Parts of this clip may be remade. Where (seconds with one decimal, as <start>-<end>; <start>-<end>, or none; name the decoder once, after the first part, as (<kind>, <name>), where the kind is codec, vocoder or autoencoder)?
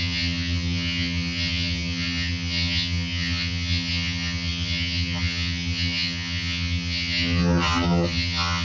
0.0-8.6 (vocoder, HiFi-GAN)